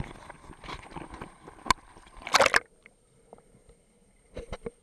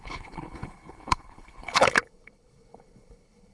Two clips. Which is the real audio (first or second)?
first